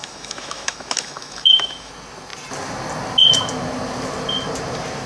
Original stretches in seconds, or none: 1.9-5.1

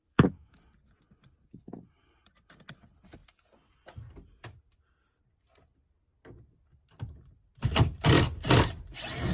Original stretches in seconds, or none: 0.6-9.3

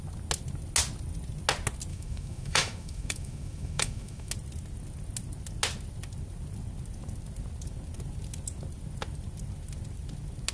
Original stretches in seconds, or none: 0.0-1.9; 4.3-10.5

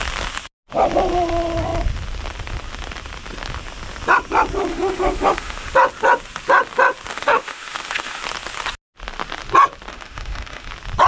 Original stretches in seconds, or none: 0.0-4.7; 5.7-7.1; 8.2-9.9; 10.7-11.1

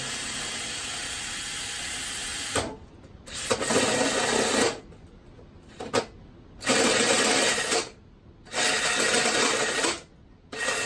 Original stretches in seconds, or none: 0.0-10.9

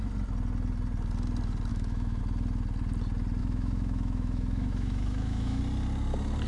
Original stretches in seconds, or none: 0.0-1.7; 2.2-3.4; 5.6-6.5

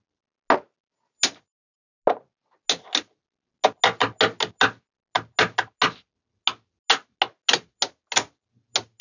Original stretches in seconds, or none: 0.0-9.0

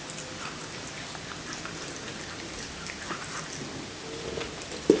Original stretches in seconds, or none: 0.0-5.0